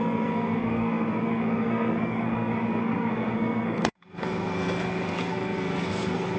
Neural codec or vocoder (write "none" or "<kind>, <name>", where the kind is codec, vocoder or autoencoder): codec, SNAC